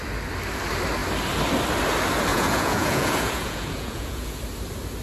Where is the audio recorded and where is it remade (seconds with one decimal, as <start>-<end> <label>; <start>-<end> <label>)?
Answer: 0.0-2.3 recorded; 2.3-4.4 remade; 4.4-5.0 recorded